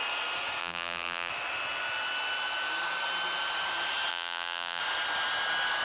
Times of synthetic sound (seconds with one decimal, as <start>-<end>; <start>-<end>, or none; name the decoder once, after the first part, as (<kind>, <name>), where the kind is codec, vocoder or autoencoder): 0.6-1.3 (vocoder, BigVGAN v2); 4.1-4.8